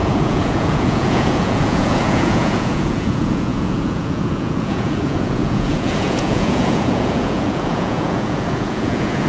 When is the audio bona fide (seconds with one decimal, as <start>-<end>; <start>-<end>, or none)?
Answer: none